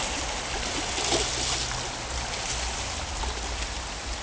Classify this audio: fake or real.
real